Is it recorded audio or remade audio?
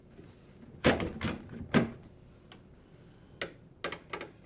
recorded